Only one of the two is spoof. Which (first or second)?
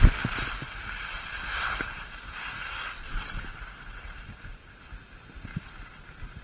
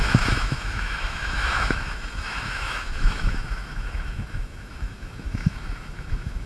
second